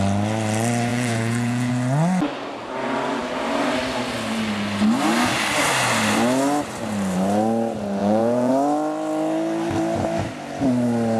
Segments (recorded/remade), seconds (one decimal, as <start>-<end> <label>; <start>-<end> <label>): 0.0-0.9 recorded; 0.9-1.7 remade; 1.7-8.0 recorded; 8.0-8.5 remade; 8.5-11.2 recorded